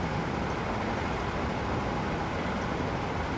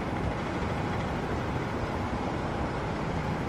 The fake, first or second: second